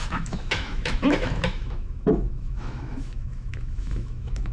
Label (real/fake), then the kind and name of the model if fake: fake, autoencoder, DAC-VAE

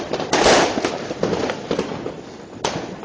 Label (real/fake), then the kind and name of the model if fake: real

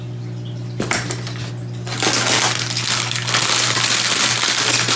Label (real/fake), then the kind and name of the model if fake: real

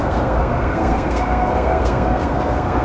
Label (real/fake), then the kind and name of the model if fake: fake, codec, SNAC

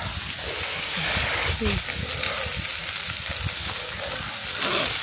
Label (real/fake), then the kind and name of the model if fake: real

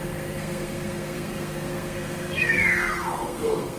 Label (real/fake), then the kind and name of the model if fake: fake, codec, SNAC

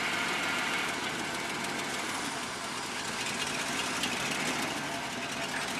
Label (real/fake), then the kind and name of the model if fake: real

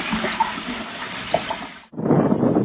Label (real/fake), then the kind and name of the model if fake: real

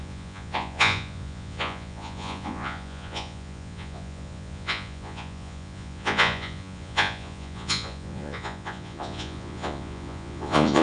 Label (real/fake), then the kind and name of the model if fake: fake, vocoder, Vocos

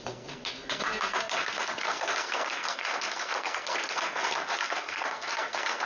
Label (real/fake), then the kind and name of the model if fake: fake, codec, SNAC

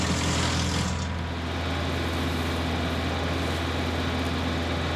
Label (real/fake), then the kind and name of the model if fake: real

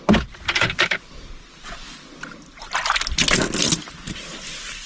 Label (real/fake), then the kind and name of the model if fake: real